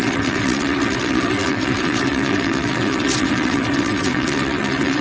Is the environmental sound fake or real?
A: fake